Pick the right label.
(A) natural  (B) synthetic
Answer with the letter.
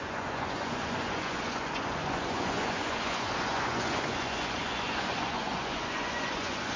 B